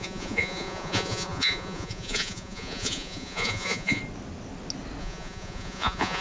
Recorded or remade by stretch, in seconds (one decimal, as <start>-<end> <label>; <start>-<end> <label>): 0.0-4.0 remade; 4.0-5.0 recorded; 5.0-6.2 remade